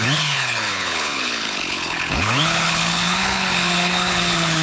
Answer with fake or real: fake